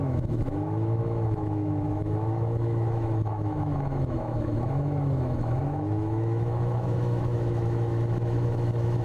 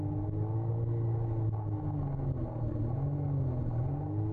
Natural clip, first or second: second